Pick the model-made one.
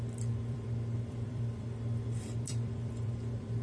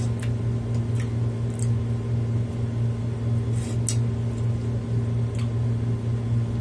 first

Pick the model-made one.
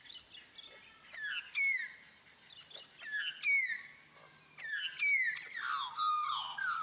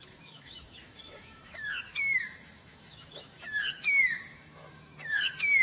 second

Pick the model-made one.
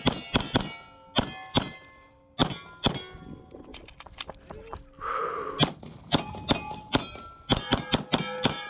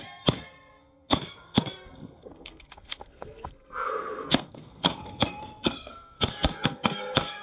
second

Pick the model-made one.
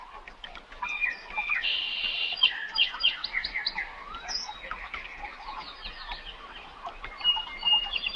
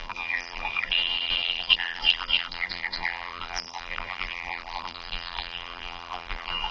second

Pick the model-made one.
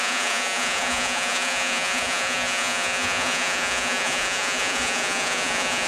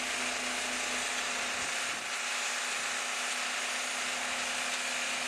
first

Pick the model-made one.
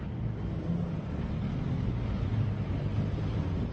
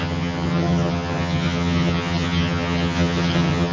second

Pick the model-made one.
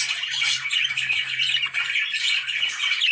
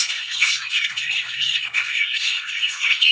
second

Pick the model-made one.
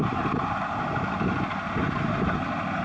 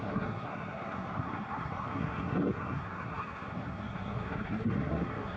second